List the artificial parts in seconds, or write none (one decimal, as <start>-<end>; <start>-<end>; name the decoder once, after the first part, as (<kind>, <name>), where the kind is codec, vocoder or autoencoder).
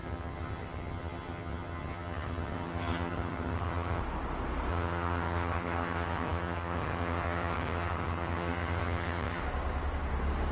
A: 0.0-4.0 (vocoder, HiFi-GAN); 4.7-9.4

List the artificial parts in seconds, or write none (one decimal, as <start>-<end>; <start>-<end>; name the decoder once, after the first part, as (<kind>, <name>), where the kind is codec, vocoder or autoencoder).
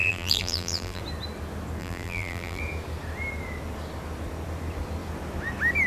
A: 0.0-1.0 (vocoder, BigVGAN v2); 1.8-2.6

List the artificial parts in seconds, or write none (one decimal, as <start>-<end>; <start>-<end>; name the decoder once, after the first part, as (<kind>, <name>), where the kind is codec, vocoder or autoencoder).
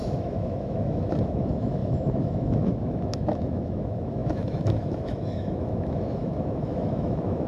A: 0.0-7.5 (autoencoder, DAC-VAE)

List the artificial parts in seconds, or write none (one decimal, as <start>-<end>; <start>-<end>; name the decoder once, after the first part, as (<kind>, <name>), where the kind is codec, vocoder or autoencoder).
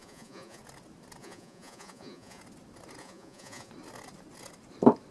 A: 0.0-0.6 (vocoder, Vocos); 1.2-2.4; 3.0-3.7